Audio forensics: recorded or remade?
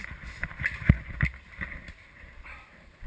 recorded